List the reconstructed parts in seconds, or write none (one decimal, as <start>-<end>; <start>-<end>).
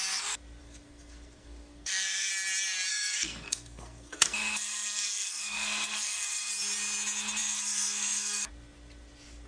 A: 0.6-2.3; 2.9-6.5; 7.4-8.5